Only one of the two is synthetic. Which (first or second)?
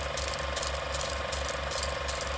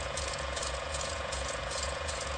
second